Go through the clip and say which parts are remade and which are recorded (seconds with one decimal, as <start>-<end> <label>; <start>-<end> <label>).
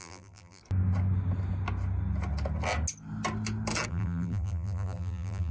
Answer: 0.0-0.6 remade; 0.6-3.9 recorded; 3.9-5.5 remade